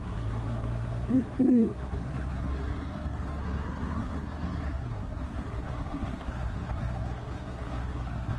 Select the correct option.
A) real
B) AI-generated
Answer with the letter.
B